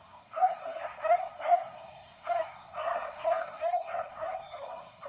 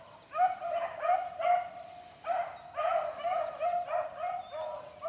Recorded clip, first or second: second